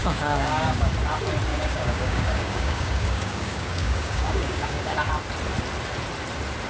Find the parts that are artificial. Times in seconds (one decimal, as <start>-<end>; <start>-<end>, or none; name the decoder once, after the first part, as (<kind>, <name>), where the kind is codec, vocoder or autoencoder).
0.0-0.9 (codec, DAC); 1.5-5.1